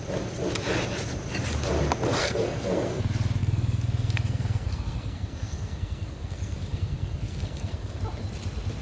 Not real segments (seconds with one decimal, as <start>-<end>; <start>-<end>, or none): 2.2-3.0; 3.4-8.0